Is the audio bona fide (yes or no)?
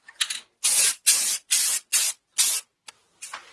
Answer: yes